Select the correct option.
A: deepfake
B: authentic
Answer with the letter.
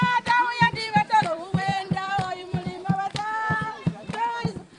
A